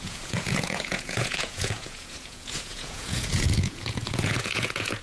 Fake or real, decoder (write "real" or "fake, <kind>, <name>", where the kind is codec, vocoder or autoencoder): fake, vocoder, Vocos